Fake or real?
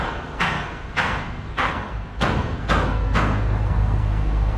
fake